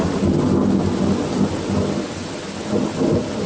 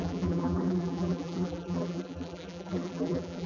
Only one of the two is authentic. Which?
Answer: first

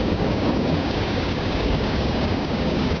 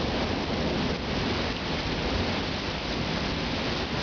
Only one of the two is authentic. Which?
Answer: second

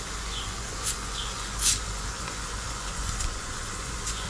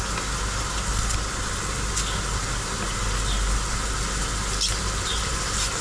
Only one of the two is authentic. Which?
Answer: second